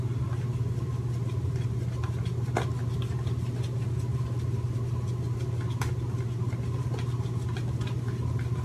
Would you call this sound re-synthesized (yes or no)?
no